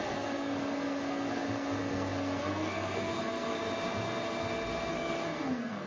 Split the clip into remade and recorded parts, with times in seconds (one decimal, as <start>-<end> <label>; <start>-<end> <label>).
0.0-3.6 remade; 3.6-4.9 recorded; 4.9-5.9 remade